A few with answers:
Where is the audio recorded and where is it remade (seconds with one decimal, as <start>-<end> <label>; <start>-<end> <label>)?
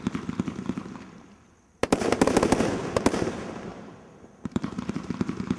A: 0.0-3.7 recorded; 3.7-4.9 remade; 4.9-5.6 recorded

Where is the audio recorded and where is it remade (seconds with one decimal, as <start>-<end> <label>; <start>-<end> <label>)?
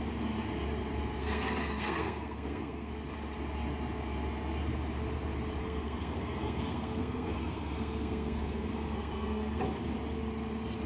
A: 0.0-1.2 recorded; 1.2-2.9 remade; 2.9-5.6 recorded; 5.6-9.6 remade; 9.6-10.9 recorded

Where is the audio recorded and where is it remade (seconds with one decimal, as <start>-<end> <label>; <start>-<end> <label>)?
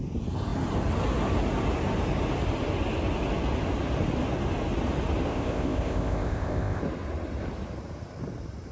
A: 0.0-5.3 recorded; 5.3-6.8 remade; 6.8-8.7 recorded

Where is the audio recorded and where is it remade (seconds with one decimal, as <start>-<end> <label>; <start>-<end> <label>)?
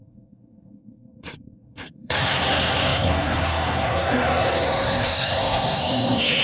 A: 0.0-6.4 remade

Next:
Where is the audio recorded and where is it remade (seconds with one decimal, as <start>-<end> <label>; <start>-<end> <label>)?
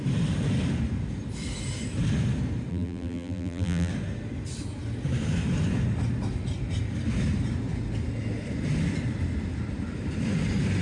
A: 0.0-2.7 recorded; 2.7-3.9 remade; 3.9-10.8 recorded